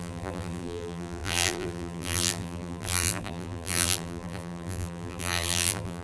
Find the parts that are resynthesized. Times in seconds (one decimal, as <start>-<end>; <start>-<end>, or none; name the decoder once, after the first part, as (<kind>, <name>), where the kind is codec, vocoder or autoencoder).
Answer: 0.0-6.0 (vocoder, BigVGAN v2)